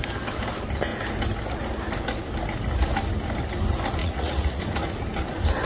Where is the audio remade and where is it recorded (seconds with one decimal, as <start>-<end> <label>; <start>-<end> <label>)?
0.0-4.0 recorded; 4.0-4.6 remade; 4.6-5.7 recorded